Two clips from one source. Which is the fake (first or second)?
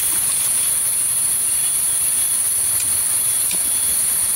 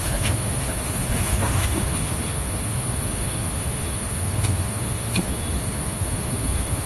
second